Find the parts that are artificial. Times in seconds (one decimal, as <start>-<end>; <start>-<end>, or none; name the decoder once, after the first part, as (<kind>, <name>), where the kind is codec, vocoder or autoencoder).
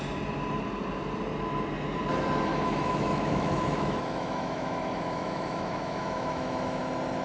2.5-6.8 (autoencoder, DAC-VAE)